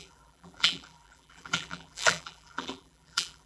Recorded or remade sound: remade